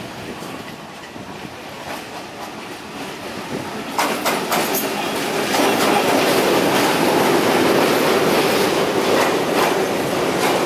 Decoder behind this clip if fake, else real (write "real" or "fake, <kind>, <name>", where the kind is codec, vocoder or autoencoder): fake, vocoder, BigVGAN v2